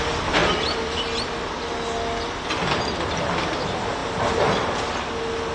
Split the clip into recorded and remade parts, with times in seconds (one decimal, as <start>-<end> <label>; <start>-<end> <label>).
0.0-5.5 recorded